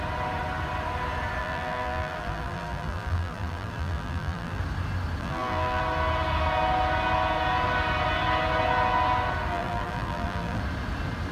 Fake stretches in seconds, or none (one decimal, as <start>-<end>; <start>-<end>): 1.4-4.6; 5.2-5.8; 9.5-10.6